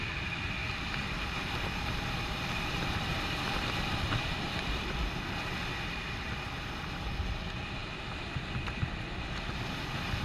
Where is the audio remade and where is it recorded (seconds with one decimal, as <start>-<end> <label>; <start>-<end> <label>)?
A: 0.0-10.2 recorded